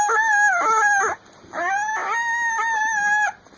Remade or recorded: recorded